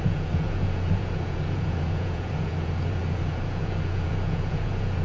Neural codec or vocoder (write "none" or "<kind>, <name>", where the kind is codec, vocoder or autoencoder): vocoder, Vocos